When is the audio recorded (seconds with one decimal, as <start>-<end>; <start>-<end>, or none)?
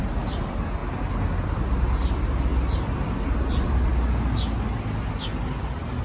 0.8-2.1; 2.5-3.4; 3.9-5.6